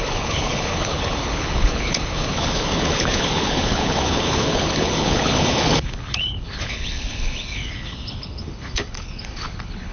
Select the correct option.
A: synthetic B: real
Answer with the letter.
A